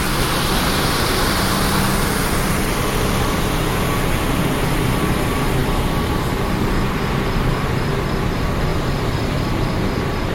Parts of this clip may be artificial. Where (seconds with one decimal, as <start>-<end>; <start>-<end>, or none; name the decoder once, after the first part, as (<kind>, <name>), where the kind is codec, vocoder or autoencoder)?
5.6-6.7 (vocoder, BigVGAN v2); 8.7-10.3